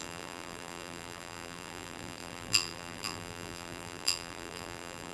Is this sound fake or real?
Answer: fake